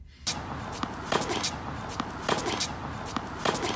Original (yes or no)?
yes